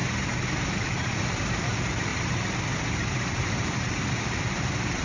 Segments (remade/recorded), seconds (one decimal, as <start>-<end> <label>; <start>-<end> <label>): 0.0-0.8 recorded; 0.8-2.1 remade; 2.1-3.3 recorded; 3.3-5.0 remade